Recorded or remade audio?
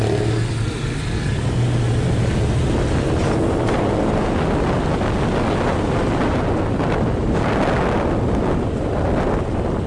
recorded